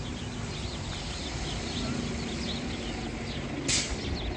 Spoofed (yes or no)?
no